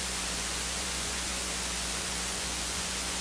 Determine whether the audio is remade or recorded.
remade